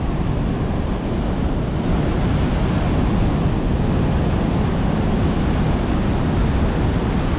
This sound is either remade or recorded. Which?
recorded